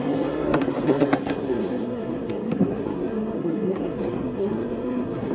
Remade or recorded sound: remade